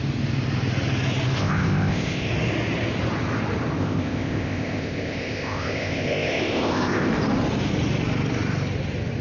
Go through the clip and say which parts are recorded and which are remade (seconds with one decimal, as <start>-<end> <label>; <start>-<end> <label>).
0.0-1.4 recorded; 1.4-2.3 remade; 2.3-3.8 recorded; 3.8-7.1 remade; 7.1-9.2 recorded